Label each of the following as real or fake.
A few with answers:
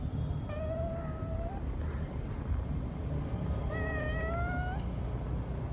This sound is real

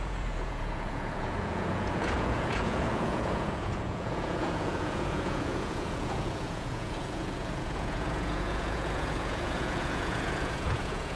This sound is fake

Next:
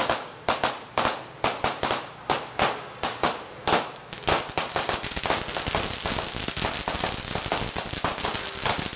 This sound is real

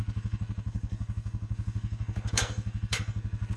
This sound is fake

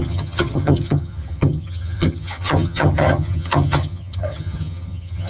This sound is fake